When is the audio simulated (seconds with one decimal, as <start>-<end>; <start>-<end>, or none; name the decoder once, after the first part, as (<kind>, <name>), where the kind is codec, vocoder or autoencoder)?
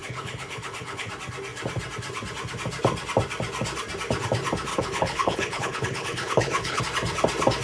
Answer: 0.0-1.1 (codec, HILCodec); 4.7-6.8